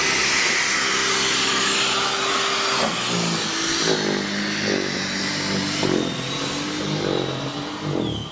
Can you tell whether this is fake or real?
real